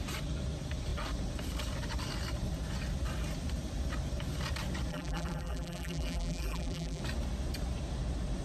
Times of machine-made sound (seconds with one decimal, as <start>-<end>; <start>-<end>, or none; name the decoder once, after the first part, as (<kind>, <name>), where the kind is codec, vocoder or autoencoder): 4.9-7.0 (vocoder, BigVGAN v2)